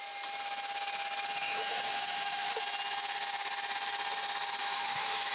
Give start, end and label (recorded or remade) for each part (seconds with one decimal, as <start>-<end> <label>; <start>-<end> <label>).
0.0-1.4 recorded; 1.4-2.6 remade; 2.6-4.6 recorded; 4.6-5.3 remade